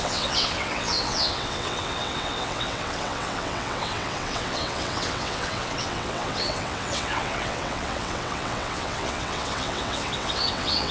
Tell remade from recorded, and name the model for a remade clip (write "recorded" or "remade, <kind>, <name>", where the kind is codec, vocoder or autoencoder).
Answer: remade, vocoder, WaveNeXt